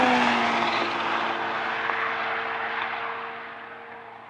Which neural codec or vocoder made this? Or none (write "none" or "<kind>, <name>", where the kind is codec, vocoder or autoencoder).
none